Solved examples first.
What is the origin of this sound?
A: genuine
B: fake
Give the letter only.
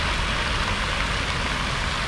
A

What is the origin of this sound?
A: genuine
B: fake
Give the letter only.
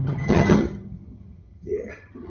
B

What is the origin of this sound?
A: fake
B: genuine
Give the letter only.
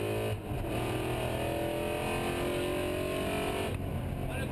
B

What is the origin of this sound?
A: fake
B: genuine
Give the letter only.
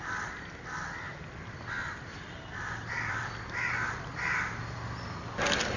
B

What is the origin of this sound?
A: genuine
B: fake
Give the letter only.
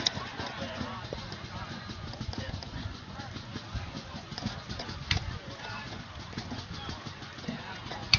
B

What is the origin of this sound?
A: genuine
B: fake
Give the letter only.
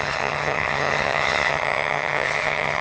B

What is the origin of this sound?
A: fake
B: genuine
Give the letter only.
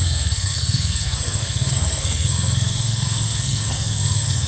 A